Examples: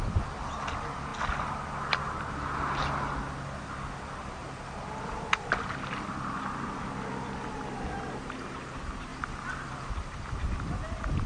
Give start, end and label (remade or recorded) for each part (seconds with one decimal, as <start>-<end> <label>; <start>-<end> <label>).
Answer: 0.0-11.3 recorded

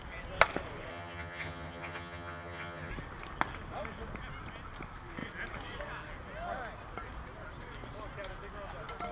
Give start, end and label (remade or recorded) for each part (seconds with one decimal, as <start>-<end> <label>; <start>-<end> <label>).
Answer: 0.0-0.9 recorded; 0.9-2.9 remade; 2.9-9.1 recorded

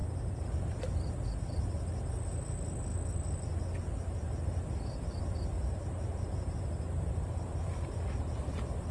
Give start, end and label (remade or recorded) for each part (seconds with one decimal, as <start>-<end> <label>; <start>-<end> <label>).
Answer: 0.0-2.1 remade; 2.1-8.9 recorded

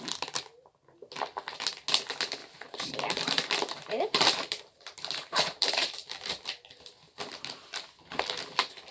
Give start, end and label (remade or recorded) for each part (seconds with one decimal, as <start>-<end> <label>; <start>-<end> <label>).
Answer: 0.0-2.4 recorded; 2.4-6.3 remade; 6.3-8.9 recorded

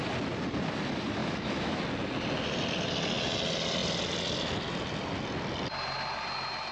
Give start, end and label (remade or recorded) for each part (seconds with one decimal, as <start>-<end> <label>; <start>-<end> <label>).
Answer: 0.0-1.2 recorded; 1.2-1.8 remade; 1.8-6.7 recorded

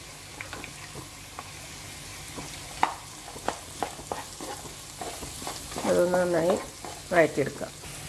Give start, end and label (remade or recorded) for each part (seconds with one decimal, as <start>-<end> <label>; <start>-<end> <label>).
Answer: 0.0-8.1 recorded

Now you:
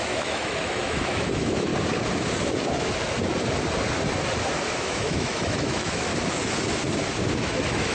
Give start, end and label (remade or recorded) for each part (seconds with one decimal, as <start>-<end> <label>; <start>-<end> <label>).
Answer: 0.0-1.7 remade; 1.7-4.8 recorded; 4.8-6.1 remade; 6.1-7.4 recorded; 7.4-7.9 remade